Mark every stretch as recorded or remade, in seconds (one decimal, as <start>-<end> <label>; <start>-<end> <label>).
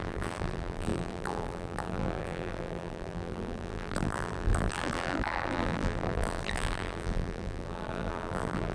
0.0-8.7 remade